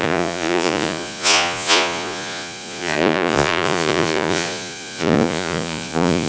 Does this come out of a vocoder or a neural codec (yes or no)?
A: yes